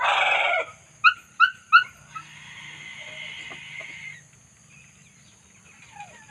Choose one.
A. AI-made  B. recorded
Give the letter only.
B